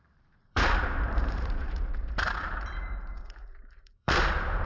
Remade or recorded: remade